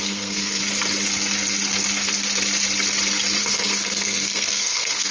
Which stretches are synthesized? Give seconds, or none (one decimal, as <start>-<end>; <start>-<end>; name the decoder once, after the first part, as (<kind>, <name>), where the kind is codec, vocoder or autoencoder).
0.0-0.6 (codec, SNAC); 3.4-5.1